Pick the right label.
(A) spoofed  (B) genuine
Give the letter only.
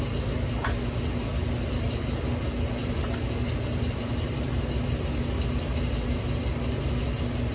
B